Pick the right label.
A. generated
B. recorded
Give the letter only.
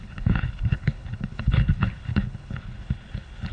A